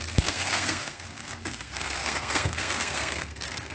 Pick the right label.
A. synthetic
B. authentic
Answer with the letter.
A